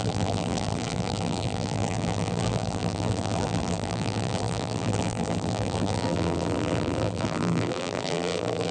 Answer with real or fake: fake